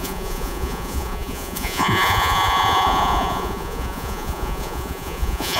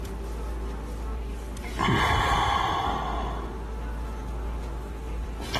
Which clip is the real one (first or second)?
second